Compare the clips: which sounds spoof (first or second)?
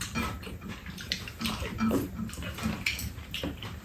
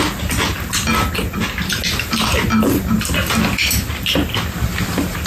first